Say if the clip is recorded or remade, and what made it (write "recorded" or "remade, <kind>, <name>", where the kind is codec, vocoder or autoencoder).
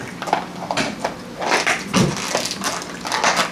recorded